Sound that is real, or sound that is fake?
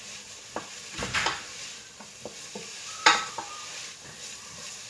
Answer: fake